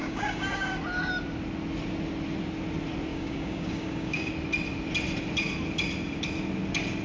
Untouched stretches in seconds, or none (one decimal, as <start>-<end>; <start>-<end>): 0.8-3.1; 4.3-7.0